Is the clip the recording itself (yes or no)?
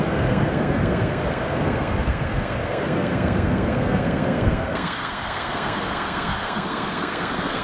no